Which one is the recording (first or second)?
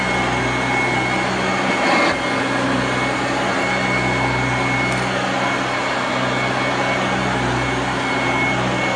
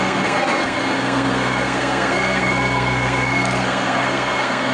first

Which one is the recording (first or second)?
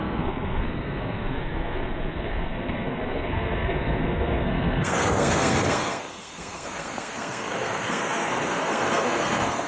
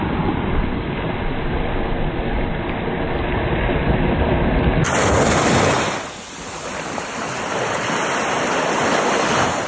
second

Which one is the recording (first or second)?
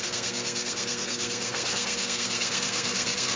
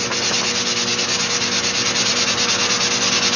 second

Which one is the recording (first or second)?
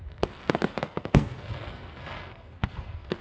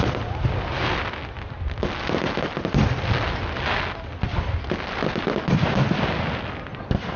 second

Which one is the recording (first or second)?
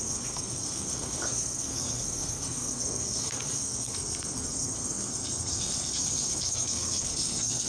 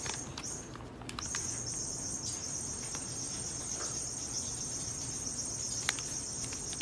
second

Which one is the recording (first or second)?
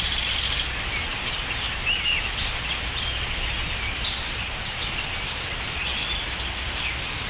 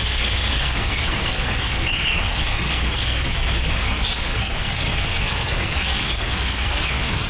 first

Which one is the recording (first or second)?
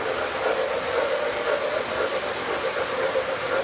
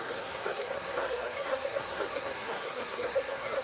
first